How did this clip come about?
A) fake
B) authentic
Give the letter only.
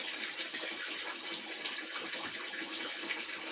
B